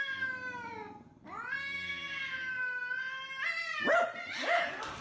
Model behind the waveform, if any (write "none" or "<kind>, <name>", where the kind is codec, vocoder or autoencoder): none